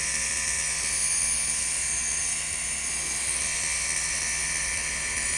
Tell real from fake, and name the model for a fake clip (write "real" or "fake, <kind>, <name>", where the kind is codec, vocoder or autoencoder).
real